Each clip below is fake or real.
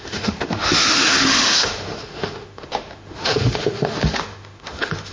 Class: fake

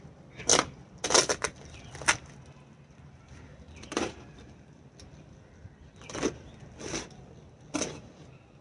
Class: real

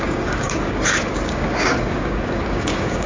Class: fake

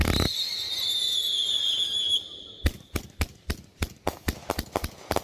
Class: real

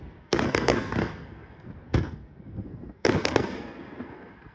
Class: fake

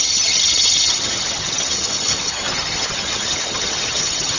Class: fake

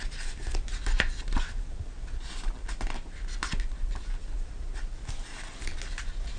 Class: real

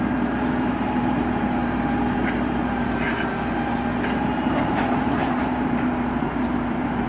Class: fake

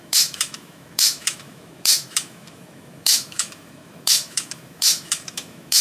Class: fake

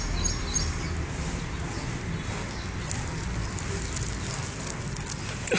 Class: real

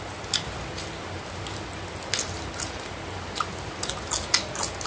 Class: real